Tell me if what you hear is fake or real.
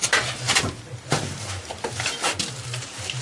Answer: real